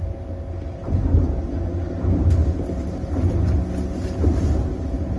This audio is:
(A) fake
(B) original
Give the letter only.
B